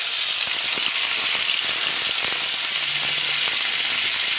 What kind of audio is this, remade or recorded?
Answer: recorded